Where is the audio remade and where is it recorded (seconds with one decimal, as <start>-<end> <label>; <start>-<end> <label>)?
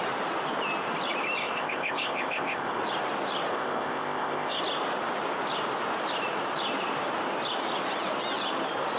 0.0-1.4 recorded; 1.4-2.8 remade; 2.8-3.5 recorded; 3.5-4.6 remade; 4.6-9.0 recorded